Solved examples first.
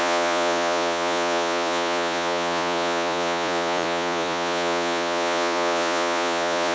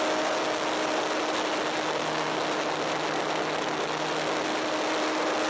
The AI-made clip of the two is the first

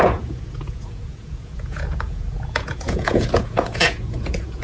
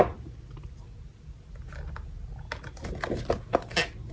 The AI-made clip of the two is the first